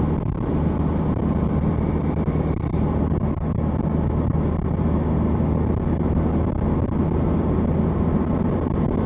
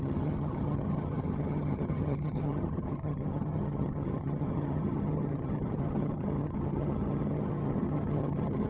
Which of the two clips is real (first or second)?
first